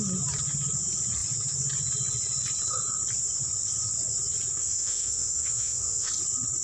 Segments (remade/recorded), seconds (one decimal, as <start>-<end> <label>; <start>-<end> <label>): 0.0-4.6 recorded; 4.6-6.1 remade; 6.1-6.6 recorded